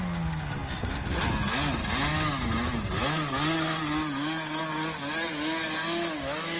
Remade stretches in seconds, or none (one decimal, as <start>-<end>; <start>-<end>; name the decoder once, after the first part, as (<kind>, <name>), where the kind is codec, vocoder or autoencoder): 5.8-6.6 (autoencoder, DAC-VAE)

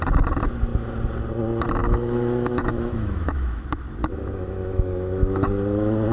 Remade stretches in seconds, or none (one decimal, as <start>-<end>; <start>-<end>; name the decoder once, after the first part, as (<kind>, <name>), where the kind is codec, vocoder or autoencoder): 1.8-5.5 (autoencoder, DAC-VAE)

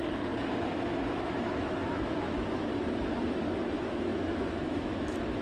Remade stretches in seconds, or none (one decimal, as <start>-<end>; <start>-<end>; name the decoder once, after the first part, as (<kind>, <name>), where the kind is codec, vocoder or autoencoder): 0.5-2.7 (autoencoder, DAC-VAE); 3.6-5.4

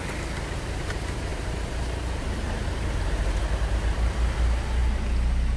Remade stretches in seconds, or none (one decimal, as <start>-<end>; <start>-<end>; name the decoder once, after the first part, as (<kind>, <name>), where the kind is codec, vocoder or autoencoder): none

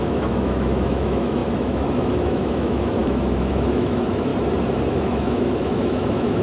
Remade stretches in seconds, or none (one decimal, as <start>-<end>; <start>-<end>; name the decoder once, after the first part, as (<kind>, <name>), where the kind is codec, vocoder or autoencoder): 0.0-4.3 (autoencoder, DAC-VAE); 4.9-6.4

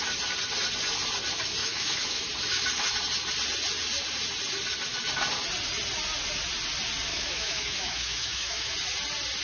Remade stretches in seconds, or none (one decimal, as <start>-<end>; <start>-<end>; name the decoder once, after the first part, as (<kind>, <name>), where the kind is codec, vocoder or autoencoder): 1.6-2.2 (autoencoder, DAC-VAE); 7.1-8.7